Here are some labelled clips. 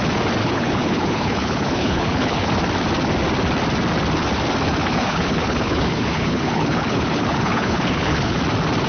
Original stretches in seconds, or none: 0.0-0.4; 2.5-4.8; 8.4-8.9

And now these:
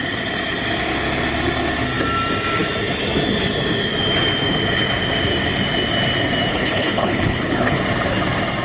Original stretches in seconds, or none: 0.0-6.5; 7.8-8.6

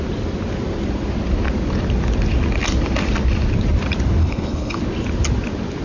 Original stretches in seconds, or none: 0.0-4.2; 4.8-5.8